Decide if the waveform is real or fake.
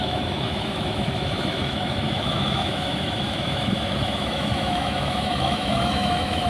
fake